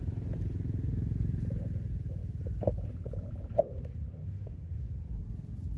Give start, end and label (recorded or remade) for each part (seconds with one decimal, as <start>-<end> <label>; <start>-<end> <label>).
0.0-4.2 recorded; 4.2-5.2 remade; 5.2-5.8 recorded